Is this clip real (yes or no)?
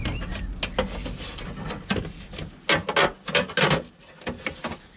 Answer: yes